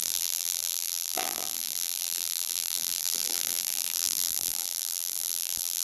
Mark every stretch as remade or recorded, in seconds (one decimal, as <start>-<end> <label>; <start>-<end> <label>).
0.0-5.8 remade